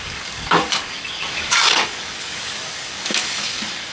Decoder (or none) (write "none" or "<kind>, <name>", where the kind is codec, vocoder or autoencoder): codec, DAC